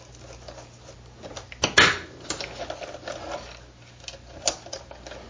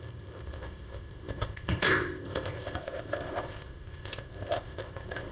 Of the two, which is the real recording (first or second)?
first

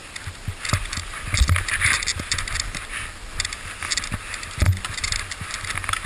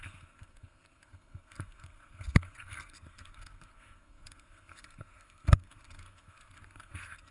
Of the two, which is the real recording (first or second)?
first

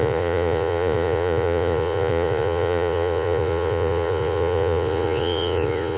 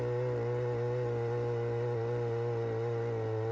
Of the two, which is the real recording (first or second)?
second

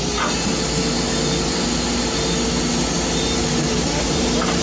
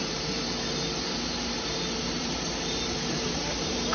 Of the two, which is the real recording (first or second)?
first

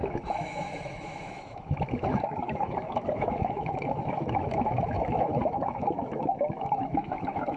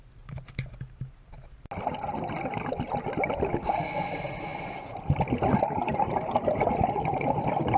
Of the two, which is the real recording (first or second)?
second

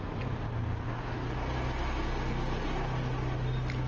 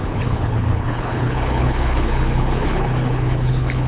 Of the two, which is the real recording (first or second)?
first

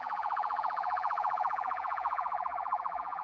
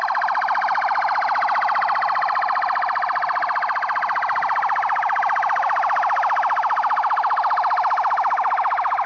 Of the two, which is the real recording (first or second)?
second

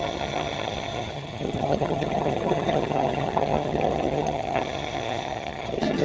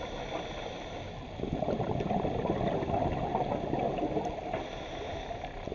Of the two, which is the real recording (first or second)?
second